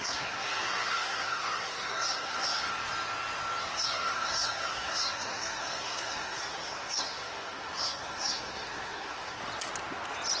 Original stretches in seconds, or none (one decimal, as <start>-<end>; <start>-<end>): 2.7-3.6; 9.4-10.4